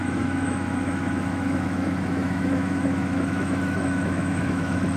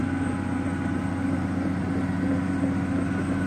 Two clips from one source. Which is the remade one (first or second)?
first